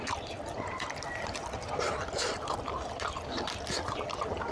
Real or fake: real